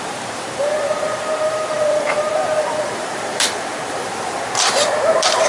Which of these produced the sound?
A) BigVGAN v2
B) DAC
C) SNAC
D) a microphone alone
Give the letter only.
A